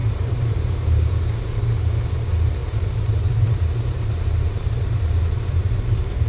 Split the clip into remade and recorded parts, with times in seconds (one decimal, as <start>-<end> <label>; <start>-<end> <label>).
0.0-1.1 remade; 1.1-2.6 recorded; 2.6-6.3 remade